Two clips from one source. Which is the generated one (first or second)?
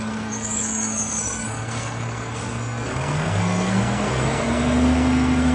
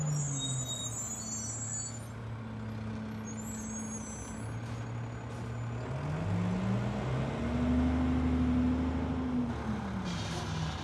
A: first